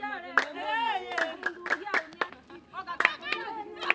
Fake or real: real